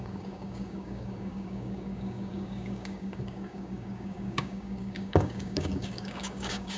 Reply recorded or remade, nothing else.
remade